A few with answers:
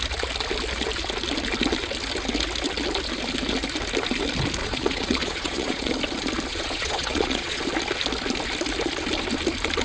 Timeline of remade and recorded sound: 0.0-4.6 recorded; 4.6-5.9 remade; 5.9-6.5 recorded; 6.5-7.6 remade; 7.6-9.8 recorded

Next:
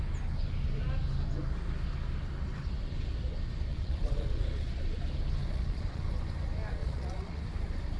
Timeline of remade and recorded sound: 0.0-3.7 recorded; 3.7-4.8 remade; 4.8-5.4 recorded; 5.4-6.0 remade; 6.0-6.8 recorded; 6.8-7.4 remade; 7.4-8.0 recorded

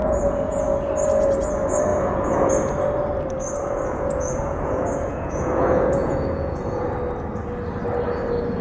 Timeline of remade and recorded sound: 0.0-0.9 remade; 0.9-1.9 recorded; 1.9-2.5 remade; 2.5-3.6 recorded; 3.6-6.9 remade; 6.9-8.6 recorded

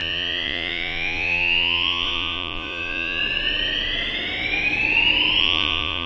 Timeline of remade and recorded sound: 0.0-3.2 remade; 3.2-5.4 recorded; 5.4-6.1 remade